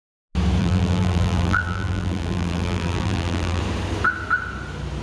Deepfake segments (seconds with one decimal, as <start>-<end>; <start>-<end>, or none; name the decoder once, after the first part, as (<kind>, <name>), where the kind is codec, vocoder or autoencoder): 0.6-3.6 (vocoder, BigVGAN v2)